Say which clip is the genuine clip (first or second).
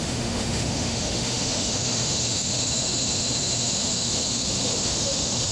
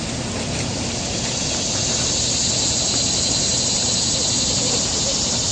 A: second